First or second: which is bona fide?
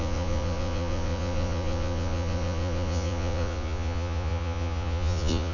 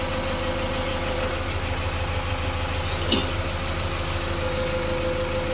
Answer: second